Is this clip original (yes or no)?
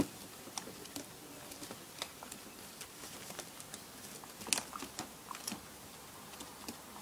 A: yes